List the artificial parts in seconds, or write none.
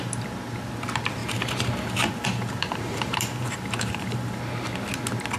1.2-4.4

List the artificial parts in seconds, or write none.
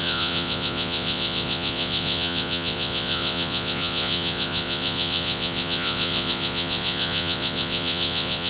0.0-8.5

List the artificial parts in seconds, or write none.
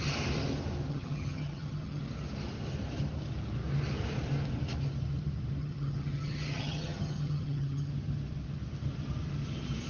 0.9-2.0; 5.6-7.9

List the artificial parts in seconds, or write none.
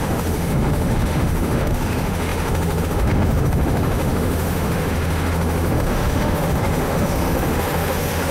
0.0-8.3